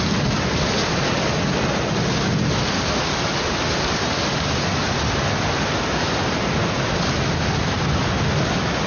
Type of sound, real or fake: real